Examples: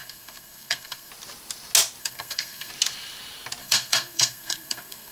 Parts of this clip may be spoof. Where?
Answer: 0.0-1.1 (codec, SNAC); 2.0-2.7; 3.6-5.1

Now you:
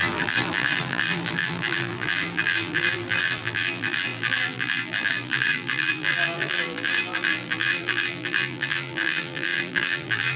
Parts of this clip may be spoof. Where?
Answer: 0.0-10.4 (vocoder, BigVGAN v2)